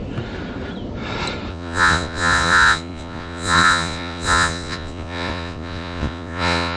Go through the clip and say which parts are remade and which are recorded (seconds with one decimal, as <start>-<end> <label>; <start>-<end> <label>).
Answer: 0.0-1.5 recorded; 1.5-6.8 remade